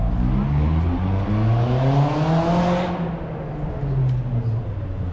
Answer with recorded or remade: recorded